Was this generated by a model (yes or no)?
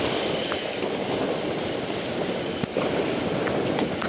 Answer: no